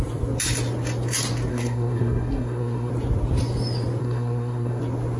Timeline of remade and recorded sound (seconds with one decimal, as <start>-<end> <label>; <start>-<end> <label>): 0.0-1.5 recorded; 1.5-2.9 remade; 2.9-4.0 recorded; 4.0-4.8 remade; 4.8-5.2 recorded

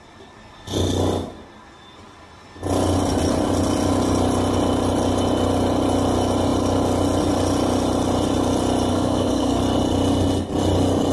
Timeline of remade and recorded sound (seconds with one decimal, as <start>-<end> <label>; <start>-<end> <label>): 0.0-8.9 recorded; 8.9-9.6 remade; 9.6-11.1 recorded

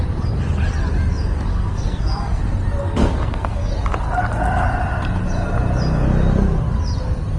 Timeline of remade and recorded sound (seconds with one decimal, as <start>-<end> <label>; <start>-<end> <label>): 0.0-1.5 recorded; 1.5-2.4 remade; 2.4-3.0 recorded; 3.0-3.7 remade; 3.7-7.4 recorded

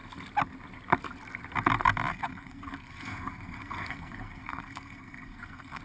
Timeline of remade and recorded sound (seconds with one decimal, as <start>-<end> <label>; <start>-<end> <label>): 0.0-2.1 recorded; 2.1-5.8 remade

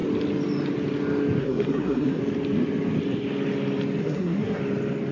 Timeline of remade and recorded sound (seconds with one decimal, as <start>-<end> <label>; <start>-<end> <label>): 0.0-1.4 recorded; 1.4-2.2 remade; 2.2-4.0 recorded; 4.0-4.6 remade; 4.6-5.1 recorded

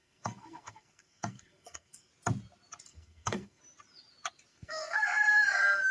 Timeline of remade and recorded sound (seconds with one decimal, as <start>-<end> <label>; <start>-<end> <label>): 0.0-2.1 remade; 2.1-2.9 recorded; 2.9-3.6 remade; 3.6-4.5 recorded; 4.5-5.9 remade

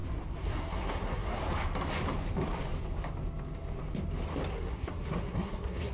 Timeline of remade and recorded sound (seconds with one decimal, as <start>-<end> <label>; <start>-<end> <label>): 0.0-0.5 recorded; 0.5-1.4 remade; 1.4-4.5 recorded; 4.5-5.9 remade

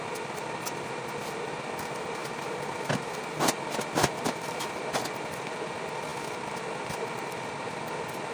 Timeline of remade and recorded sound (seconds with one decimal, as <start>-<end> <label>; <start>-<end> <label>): 0.0-8.3 recorded